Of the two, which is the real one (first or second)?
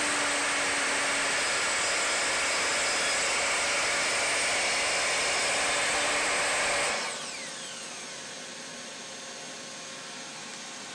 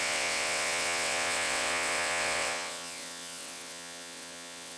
first